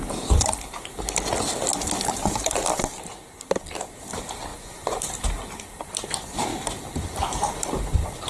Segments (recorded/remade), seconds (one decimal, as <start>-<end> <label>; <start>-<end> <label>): 0.0-4.5 recorded; 4.5-5.0 remade; 5.0-8.3 recorded